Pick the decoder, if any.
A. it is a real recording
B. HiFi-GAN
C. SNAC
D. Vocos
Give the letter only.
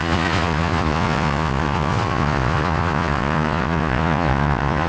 D